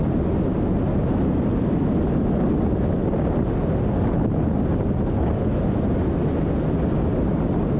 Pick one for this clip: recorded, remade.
recorded